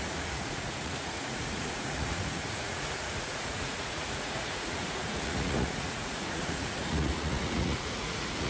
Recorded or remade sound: remade